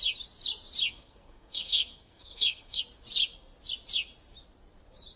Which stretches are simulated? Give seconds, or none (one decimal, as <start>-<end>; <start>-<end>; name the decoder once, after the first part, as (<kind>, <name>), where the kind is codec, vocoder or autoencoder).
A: 0.9-2.8 (codec, SNAC)